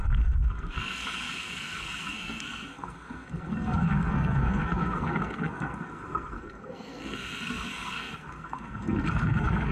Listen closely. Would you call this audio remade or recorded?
remade